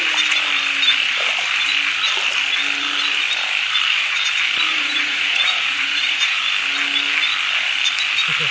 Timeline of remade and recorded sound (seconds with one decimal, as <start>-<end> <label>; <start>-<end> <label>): 0.0-4.7 recorded; 4.7-6.4 remade; 6.4-8.5 recorded